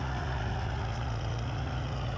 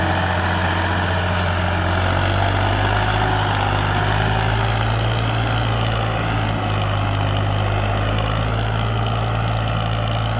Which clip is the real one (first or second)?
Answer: second